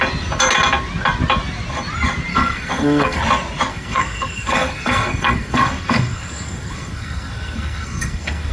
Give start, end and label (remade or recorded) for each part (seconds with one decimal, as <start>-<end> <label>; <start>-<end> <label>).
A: 0.0-2.3 recorded; 2.3-3.2 remade; 3.2-3.7 recorded; 3.7-8.5 remade